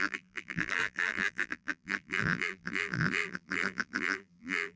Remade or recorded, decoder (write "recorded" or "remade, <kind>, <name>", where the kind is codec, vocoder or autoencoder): remade, vocoder, BigVGAN v2